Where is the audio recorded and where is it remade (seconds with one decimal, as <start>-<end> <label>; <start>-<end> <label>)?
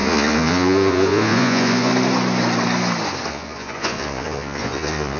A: 0.0-1.9 remade; 1.9-3.3 recorded; 3.3-5.2 remade